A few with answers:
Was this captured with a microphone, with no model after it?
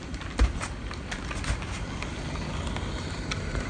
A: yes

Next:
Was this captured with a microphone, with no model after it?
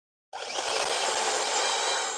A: yes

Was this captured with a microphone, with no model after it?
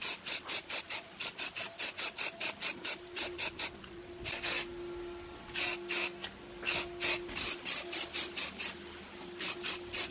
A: yes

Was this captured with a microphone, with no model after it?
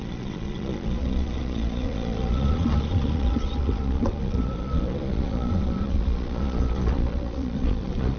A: no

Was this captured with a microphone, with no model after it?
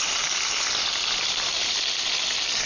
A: yes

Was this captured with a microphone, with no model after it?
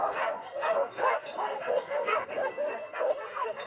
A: no